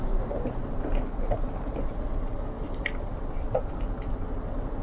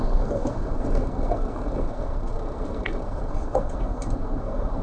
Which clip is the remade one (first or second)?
second